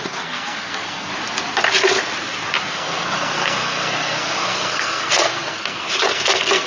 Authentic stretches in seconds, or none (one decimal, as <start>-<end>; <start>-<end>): 1.1-2.6